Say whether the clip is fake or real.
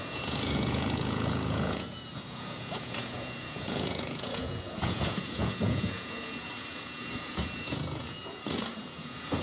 fake